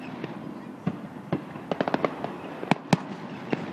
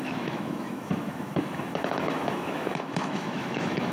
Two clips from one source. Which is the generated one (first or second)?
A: second